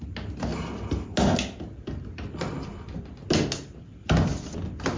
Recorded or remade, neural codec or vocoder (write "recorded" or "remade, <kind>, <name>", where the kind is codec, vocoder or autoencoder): recorded